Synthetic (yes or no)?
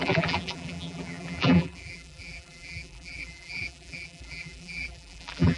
yes